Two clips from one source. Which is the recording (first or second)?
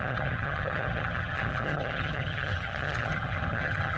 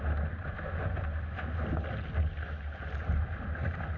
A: second